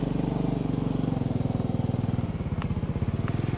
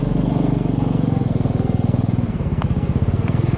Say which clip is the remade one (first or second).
second